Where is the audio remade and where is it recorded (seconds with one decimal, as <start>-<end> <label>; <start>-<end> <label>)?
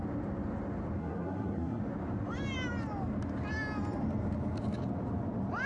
0.0-1.0 recorded; 1.0-1.8 remade; 1.8-5.7 recorded